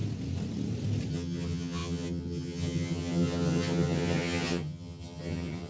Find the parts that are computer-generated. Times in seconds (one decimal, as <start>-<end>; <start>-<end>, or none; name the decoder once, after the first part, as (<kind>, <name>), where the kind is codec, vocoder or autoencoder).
1.1-5.7 (vocoder, HiFi-GAN)

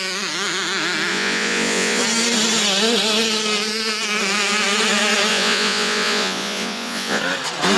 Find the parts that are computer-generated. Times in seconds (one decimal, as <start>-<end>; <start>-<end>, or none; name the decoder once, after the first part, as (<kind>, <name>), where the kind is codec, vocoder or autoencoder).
1.1-2.0 (vocoder, Vocos); 5.3-7.2

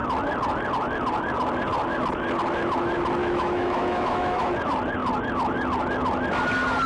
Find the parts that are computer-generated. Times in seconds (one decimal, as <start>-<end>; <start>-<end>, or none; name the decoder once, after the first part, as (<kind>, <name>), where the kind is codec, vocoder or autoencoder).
3.2-4.5 (autoencoder, DAC-VAE)

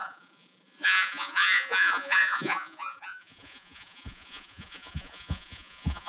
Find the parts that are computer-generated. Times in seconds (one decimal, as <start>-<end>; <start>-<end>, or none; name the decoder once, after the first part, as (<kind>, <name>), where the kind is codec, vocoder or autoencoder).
0.0-6.1 (vocoder, Vocos)

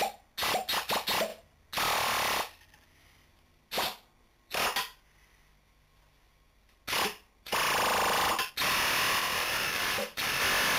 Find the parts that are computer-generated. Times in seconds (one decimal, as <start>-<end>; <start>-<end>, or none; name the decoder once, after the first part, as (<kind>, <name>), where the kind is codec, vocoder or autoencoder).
9.2-10.4 (vocoder, BigVGAN v2)